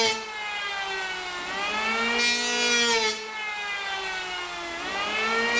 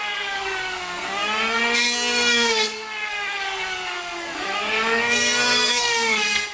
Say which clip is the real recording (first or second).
first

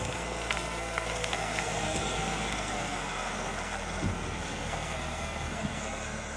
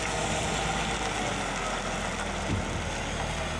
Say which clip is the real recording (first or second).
second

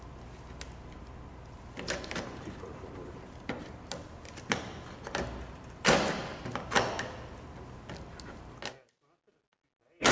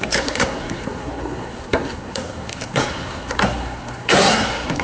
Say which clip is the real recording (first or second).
first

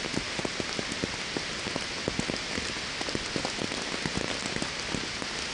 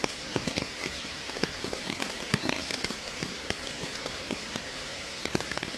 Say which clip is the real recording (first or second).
first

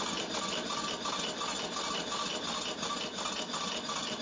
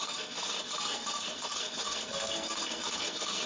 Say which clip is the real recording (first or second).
first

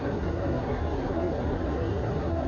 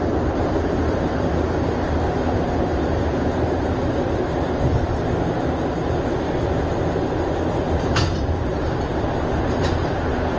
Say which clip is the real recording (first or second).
second